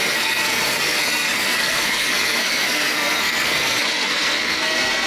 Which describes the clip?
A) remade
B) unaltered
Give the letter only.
A